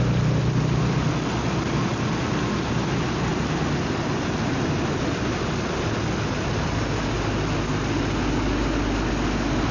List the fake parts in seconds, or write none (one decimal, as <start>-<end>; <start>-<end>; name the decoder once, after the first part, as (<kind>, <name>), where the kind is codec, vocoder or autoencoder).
none